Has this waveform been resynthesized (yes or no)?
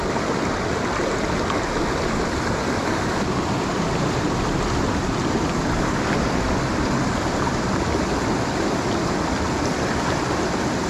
no